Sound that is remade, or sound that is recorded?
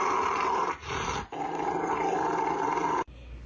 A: recorded